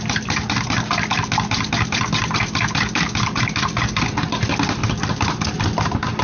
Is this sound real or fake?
real